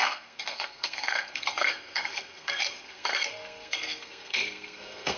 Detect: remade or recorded remade